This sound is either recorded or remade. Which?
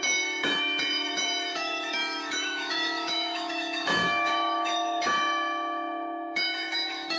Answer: remade